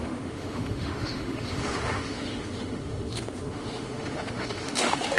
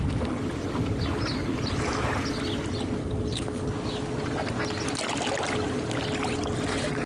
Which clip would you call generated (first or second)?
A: first